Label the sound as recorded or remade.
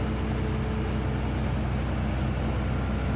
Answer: recorded